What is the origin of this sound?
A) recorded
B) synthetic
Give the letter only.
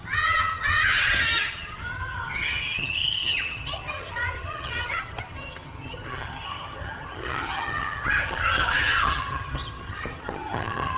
B